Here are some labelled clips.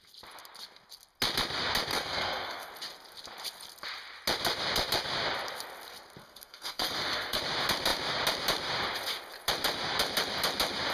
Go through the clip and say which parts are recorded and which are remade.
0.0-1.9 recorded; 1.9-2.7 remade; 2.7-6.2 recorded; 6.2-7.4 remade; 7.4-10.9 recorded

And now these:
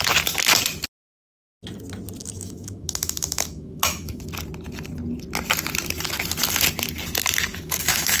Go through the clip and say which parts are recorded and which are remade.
0.0-2.2 recorded; 2.2-4.2 remade; 4.2-7.5 recorded; 7.5-8.2 remade

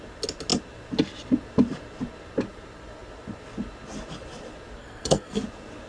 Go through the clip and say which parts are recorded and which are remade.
0.0-4.8 recorded; 4.8-5.4 remade; 5.4-5.9 recorded

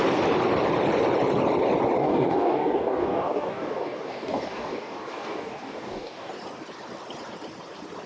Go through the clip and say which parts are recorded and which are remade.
0.0-2.0 recorded; 2.0-6.3 remade; 6.3-8.1 recorded

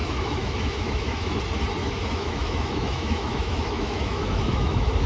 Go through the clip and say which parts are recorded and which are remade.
0.0-1.4 remade; 1.4-1.8 recorded; 1.8-5.1 remade

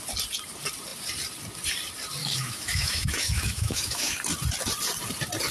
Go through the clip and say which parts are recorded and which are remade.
0.0-2.2 recorded; 2.2-4.2 remade; 4.2-5.5 recorded

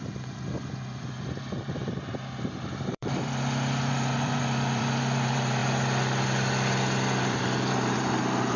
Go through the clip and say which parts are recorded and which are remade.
0.0-5.6 remade; 5.6-7.2 recorded; 7.2-8.6 remade